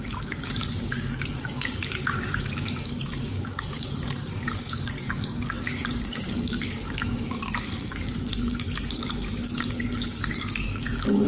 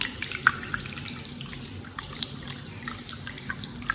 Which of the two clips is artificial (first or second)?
first